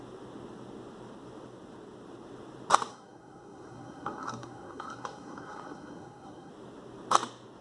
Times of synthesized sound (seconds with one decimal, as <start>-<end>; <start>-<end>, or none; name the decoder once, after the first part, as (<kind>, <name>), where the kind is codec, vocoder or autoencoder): 2.9-6.5 (codec, SNAC)

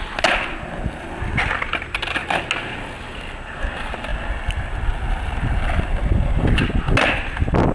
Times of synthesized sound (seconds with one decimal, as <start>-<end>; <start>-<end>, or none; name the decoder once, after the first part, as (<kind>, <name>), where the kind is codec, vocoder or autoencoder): none